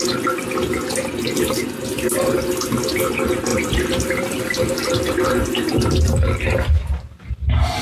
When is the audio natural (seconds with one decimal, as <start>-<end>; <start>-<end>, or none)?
0.0-3.5; 7.3-7.8